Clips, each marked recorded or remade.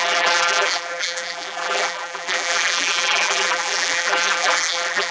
remade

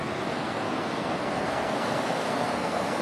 remade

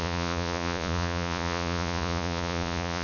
remade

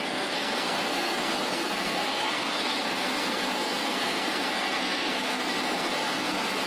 remade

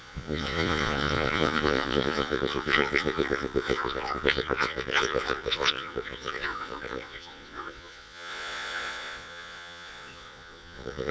remade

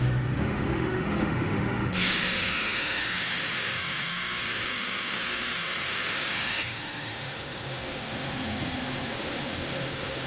remade